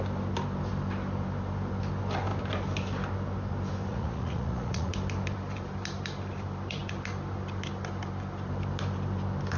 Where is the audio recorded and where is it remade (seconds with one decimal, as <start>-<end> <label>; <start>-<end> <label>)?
0.0-3.9 recorded; 3.9-4.9 remade; 4.9-9.6 recorded